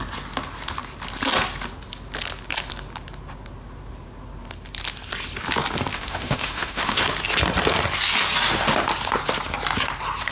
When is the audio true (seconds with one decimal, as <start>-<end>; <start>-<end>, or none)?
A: 0.0-5.9; 7.0-10.3